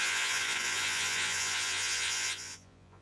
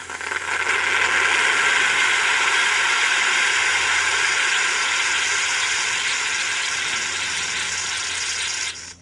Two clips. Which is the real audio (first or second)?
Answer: second